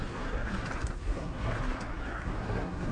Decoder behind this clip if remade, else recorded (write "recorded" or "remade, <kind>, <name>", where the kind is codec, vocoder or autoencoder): remade, codec, SNAC